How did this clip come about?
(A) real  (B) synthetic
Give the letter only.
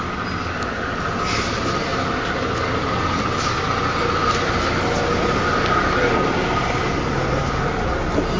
A